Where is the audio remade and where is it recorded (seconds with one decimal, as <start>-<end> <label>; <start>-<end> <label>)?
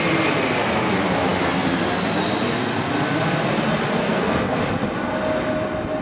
0.0-4.0 recorded; 4.0-4.6 remade; 4.6-6.0 recorded